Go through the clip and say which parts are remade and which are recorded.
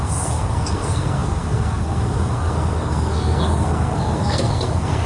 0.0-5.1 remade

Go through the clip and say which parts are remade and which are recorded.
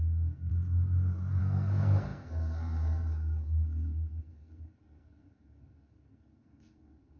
0.0-0.5 remade; 0.5-1.4 recorded; 1.4-7.2 remade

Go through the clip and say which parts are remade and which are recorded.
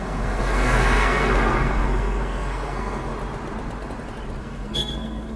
0.0-3.1 remade; 3.1-4.4 recorded; 4.4-5.4 remade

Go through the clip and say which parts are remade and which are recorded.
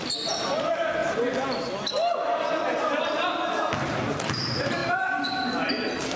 0.0-6.2 recorded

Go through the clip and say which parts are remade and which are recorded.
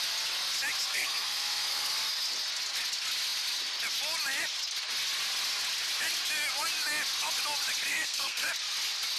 0.0-0.9 recorded; 0.9-1.9 remade; 1.9-7.9 recorded; 7.9-8.5 remade; 8.5-9.2 recorded